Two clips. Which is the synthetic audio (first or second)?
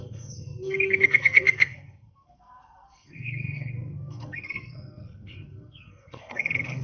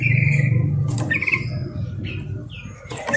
first